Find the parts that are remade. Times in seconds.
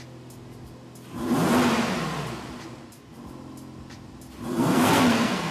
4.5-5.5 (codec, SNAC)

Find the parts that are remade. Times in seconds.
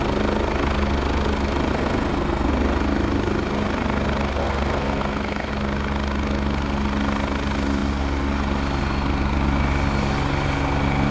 1.7-2.5 (codec, SNAC); 4.4-5.5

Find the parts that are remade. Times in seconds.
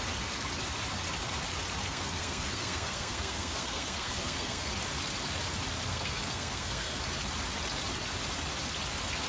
1.8-4.7 (codec, SNAC); 5.9-7.0